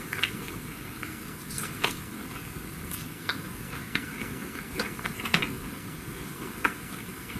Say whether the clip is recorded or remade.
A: remade